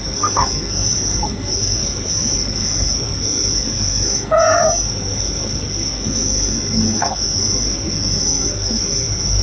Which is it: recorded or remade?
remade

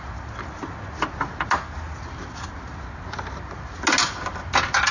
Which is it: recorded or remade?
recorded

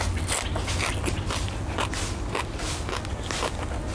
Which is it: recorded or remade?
recorded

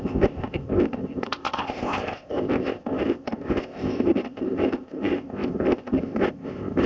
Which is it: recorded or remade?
remade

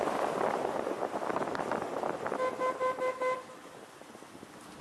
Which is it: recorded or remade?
recorded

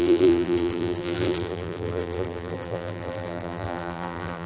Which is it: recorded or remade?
remade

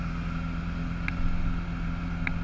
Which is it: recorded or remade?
recorded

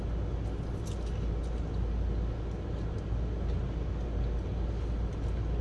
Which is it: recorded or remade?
recorded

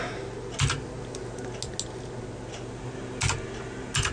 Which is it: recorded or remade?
recorded